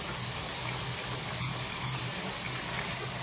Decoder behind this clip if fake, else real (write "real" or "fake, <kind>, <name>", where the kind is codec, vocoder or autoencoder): real